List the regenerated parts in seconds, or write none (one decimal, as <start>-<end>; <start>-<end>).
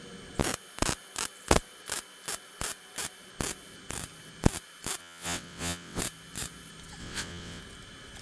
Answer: 5.0-6.0; 7.0-7.6